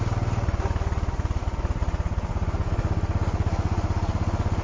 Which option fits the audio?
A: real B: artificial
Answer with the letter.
A